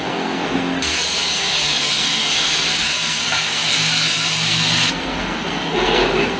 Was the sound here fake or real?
fake